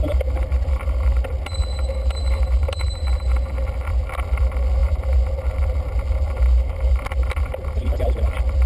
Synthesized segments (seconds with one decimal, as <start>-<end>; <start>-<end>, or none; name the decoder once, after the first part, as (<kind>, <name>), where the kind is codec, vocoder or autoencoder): none